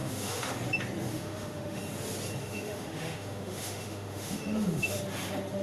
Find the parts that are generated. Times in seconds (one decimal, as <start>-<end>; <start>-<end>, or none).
0.0-0.5; 1.1-1.8; 2.4-5.0